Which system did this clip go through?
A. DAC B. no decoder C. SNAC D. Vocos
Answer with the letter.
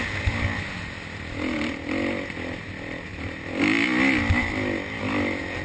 B